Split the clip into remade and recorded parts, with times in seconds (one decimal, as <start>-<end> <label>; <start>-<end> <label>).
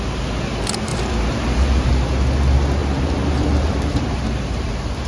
0.0-0.9 recorded; 0.9-1.9 remade; 1.9-2.8 recorded; 2.8-5.1 remade